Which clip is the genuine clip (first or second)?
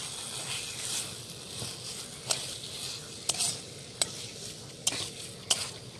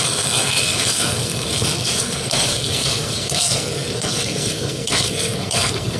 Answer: first